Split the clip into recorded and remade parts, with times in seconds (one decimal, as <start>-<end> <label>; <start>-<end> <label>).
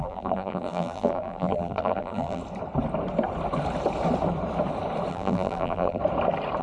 0.0-2.4 remade; 2.4-5.1 recorded; 5.1-6.0 remade; 6.0-6.6 recorded